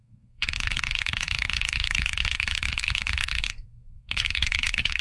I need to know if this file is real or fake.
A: fake